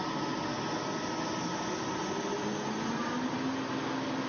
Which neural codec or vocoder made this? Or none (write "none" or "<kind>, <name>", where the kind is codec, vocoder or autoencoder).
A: none